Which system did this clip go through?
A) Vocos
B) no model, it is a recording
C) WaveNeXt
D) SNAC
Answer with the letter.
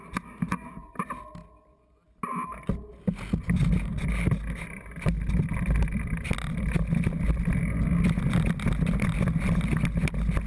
B